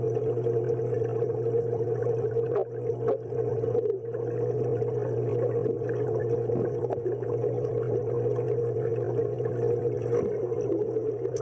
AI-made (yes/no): no